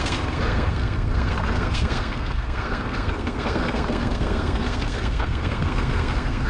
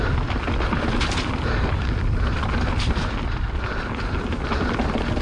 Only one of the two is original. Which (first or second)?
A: second